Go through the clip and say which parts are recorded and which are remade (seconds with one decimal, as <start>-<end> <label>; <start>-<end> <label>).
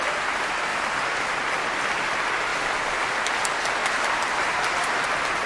0.0-0.7 recorded; 0.7-1.3 remade; 1.3-2.5 recorded; 2.5-3.3 remade; 3.3-3.8 recorded; 3.8-5.5 remade